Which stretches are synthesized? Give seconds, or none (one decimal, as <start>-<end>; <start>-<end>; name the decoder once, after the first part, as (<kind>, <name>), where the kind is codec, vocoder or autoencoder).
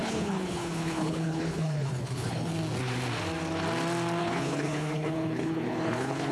0.0-2.5 (codec, HILCodec); 4.2-6.3